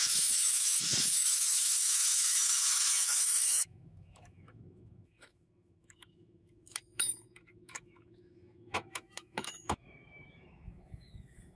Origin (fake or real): fake